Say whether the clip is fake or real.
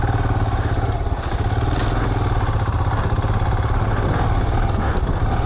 real